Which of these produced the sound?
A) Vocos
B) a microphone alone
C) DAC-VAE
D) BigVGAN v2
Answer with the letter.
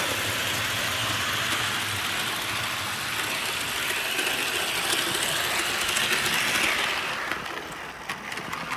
B